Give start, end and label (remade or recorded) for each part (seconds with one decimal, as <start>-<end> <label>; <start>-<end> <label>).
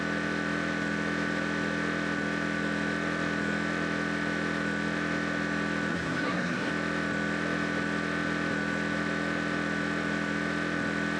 0.0-5.9 recorded; 5.9-6.7 remade; 6.7-11.2 recorded